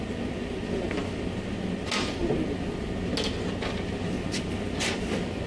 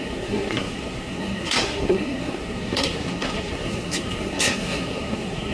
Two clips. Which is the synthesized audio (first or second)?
second